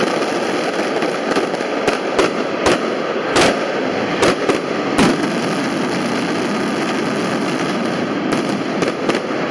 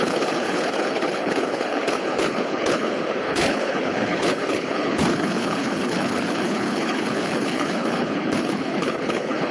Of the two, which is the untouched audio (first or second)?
first